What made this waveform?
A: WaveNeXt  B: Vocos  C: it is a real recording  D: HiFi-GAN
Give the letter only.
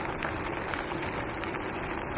C